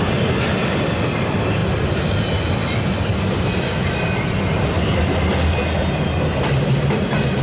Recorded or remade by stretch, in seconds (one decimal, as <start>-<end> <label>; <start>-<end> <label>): 0.0-7.4 recorded